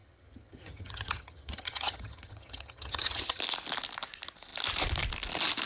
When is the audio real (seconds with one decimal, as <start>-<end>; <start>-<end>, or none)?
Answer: 3.4-5.7